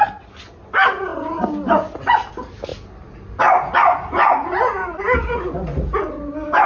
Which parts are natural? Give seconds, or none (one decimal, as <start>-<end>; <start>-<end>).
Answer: 0.0-6.7